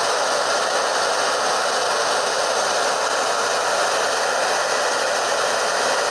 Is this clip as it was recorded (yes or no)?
yes